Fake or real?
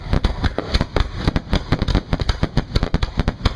real